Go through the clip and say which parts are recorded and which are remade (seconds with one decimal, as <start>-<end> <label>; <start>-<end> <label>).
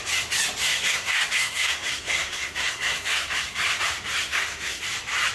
0.0-0.6 recorded; 0.6-3.8 remade; 3.8-4.2 recorded; 4.2-4.8 remade; 4.8-5.3 recorded